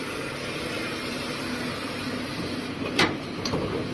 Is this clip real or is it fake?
real